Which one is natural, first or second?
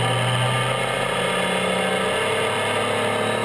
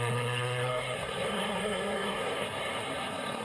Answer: first